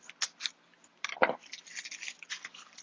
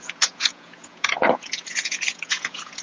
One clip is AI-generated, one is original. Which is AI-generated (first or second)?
second